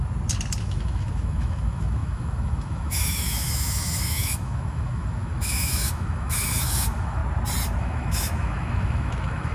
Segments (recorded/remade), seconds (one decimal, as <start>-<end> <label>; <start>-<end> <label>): 0.0-0.6 recorded; 0.6-7.2 remade; 7.2-7.8 recorded; 7.8-9.5 remade